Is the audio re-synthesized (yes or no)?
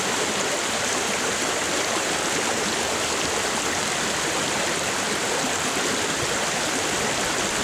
yes